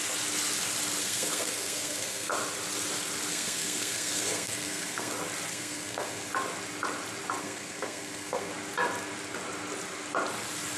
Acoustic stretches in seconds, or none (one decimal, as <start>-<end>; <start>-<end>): 0.0-1.0; 2.3-3.3; 5.1-5.5; 6.3-7.4; 8.5-10.8